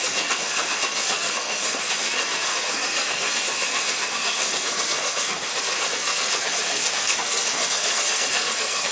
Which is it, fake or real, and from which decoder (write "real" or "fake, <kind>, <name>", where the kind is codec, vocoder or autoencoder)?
fake, codec, SNAC